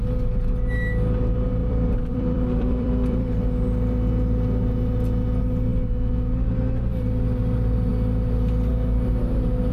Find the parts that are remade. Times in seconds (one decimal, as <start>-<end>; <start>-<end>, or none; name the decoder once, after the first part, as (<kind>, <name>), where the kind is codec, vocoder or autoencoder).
1.6-3.2 (vocoder, BigVGAN v2)